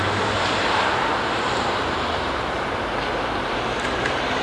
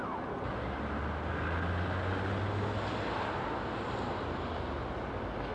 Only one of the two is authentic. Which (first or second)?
second